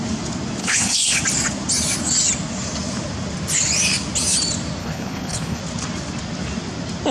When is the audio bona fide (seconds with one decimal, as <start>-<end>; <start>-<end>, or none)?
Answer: 0.0-0.6; 1.2-4.8; 5.6-7.1

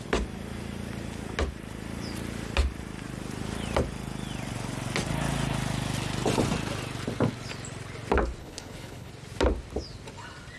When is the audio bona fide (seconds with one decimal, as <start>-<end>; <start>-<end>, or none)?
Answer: 0.0-8.4; 9.1-10.6

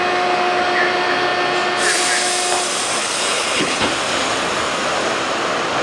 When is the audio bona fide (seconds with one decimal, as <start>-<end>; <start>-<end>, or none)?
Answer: 0.0-3.0; 3.9-5.8

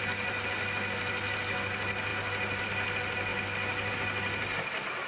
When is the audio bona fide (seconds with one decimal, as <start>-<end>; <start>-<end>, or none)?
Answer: 0.0-5.1

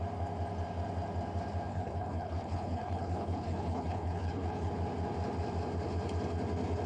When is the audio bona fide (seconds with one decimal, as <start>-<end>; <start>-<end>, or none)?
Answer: 0.0-1.7; 4.7-6.9

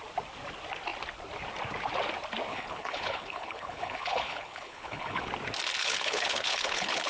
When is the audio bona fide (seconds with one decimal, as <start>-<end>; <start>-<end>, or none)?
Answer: 0.0-2.5; 5.3-5.8

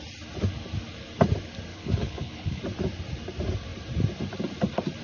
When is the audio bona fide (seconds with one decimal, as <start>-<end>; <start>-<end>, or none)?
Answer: 0.0-1.7; 2.6-5.0